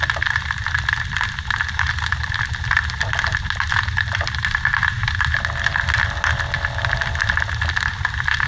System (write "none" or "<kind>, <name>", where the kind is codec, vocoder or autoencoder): none